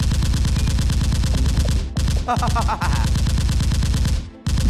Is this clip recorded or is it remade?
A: recorded